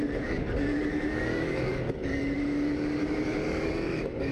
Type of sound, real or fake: fake